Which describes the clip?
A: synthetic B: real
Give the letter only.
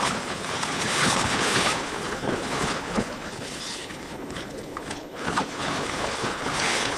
A